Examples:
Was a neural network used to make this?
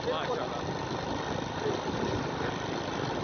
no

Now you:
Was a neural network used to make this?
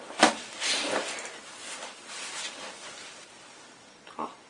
no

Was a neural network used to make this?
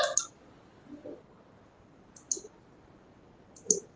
no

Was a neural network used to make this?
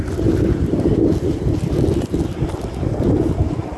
no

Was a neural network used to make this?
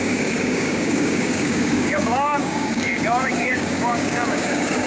yes